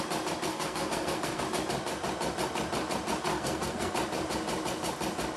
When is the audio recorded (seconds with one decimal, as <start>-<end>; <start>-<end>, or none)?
0.0-0.5; 1.4-3.3; 3.9-5.4